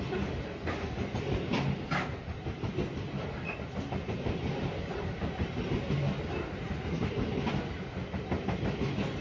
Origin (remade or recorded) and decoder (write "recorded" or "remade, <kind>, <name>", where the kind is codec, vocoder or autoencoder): recorded